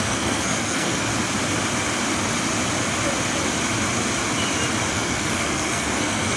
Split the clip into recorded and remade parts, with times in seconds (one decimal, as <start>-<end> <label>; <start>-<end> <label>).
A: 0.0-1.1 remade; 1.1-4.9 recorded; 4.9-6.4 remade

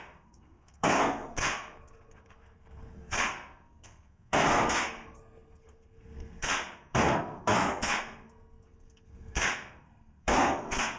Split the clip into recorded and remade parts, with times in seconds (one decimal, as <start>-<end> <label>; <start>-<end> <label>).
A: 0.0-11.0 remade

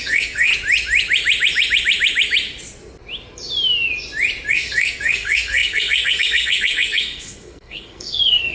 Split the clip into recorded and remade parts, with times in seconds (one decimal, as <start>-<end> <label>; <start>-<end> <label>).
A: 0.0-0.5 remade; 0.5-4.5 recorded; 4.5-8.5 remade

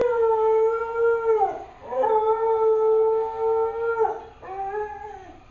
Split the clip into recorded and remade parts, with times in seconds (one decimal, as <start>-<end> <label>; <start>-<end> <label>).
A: 0.0-5.5 recorded

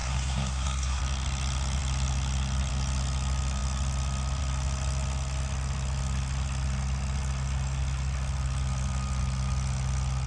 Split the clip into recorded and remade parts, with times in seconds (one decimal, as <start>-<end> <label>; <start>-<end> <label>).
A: 0.0-1.0 remade; 1.0-10.3 recorded